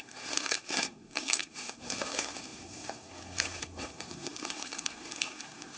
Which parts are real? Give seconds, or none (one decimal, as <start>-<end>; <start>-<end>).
none